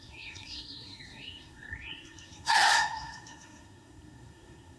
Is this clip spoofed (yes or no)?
yes